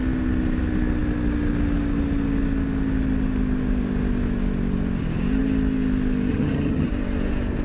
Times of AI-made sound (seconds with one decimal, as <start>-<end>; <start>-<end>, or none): 6.3-6.9